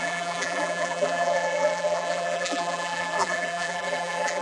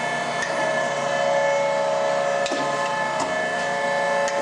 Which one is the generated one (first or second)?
first